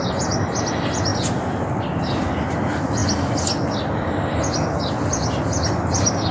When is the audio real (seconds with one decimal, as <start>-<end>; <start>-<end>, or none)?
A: 0.0-6.3